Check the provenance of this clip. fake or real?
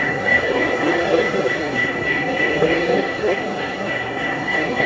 fake